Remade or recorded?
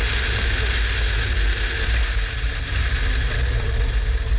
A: recorded